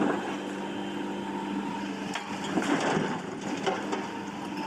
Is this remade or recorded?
recorded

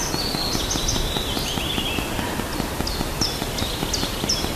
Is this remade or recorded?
recorded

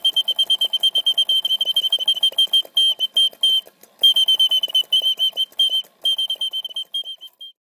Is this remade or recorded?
recorded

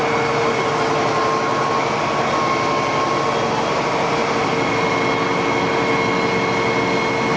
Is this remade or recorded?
recorded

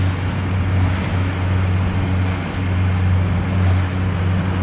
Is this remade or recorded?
recorded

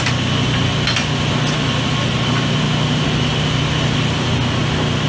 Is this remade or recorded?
recorded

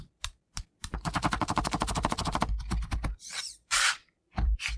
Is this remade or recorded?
remade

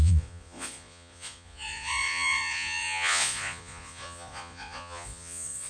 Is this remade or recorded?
remade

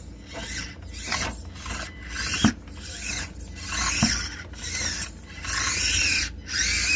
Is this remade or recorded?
recorded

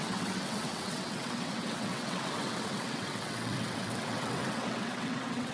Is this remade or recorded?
remade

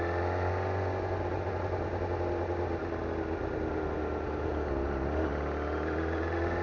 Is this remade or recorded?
recorded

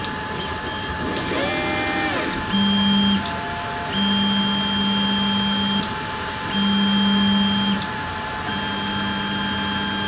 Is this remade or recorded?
recorded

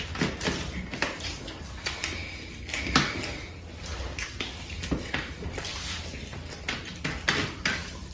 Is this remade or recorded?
recorded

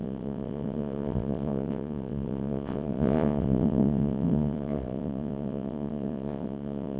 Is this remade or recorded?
remade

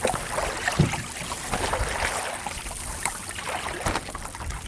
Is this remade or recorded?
recorded